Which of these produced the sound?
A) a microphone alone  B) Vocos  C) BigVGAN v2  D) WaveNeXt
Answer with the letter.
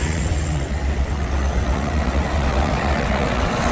D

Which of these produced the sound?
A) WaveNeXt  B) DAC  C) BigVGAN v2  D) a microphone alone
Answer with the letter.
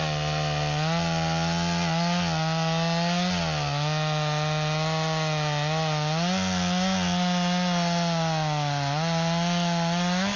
D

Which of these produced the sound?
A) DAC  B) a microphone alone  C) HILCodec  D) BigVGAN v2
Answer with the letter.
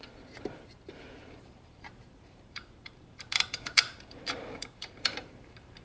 D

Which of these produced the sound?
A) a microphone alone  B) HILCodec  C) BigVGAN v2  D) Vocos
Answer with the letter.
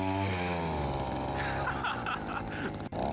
A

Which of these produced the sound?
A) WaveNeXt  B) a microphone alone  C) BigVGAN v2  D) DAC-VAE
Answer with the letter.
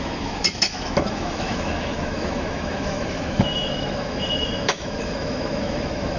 D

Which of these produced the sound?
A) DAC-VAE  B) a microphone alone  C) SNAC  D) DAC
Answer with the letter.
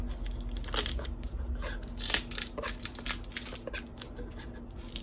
B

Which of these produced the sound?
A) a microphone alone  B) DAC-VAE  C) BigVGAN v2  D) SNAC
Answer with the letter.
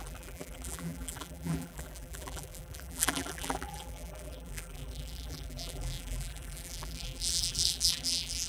C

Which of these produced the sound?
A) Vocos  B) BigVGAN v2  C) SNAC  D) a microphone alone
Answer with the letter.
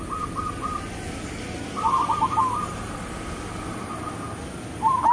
D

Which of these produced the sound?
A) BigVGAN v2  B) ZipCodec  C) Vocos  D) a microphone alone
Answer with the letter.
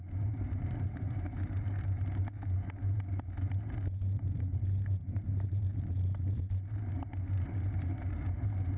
A